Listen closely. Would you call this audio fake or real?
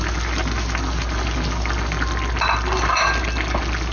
real